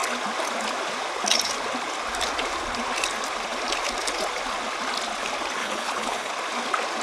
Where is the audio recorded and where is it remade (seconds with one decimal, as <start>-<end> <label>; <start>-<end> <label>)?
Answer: 0.0-5.6 recorded; 5.6-6.3 remade; 6.3-7.0 recorded